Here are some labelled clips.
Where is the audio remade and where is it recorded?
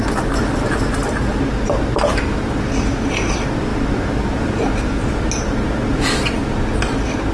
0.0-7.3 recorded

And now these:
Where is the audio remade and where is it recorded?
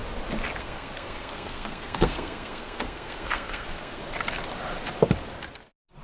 0.0-0.6 recorded; 0.6-4.0 remade; 4.0-6.0 recorded